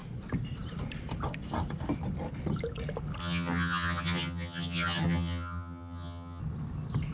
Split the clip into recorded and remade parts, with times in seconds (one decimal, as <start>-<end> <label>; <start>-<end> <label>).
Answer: 0.0-3.2 recorded; 3.2-6.4 remade; 6.4-7.1 recorded